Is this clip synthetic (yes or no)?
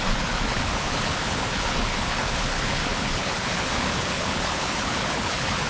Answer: yes